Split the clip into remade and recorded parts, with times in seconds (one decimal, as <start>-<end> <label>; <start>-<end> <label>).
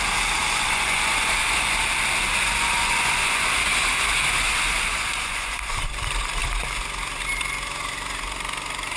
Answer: 0.0-0.4 recorded; 0.4-1.8 remade; 1.8-2.3 recorded; 2.3-5.9 remade; 5.9-9.0 recorded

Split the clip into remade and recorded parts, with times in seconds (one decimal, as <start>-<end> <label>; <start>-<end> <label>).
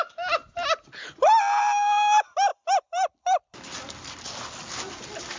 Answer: 0.0-5.4 recorded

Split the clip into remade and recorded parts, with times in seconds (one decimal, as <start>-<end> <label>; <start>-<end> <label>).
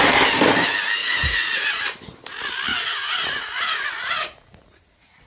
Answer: 0.0-1.0 recorded; 1.0-1.8 remade; 1.8-2.7 recorded; 2.7-5.3 remade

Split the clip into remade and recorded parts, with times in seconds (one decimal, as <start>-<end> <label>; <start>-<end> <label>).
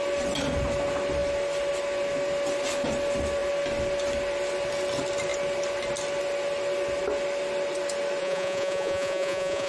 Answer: 0.0-8.2 recorded; 8.2-9.7 remade